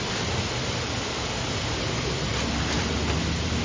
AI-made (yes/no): no